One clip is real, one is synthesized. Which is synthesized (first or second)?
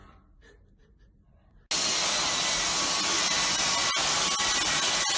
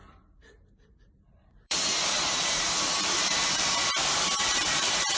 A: second